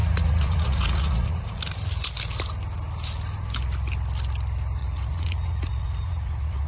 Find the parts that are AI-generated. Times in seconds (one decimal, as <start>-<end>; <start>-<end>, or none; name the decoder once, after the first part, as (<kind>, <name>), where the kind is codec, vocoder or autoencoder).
0.0-1.6 (vocoder, Vocos); 4.8-6.7